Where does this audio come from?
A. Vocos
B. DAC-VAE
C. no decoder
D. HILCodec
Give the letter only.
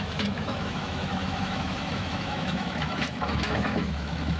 B